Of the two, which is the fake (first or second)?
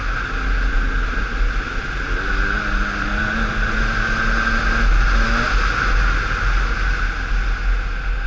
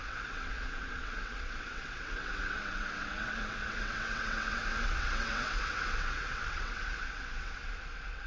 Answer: second